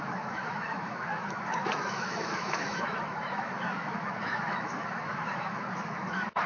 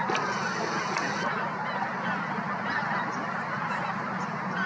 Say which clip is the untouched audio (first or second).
second